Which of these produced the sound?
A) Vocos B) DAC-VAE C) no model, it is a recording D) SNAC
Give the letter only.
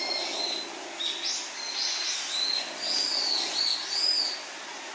C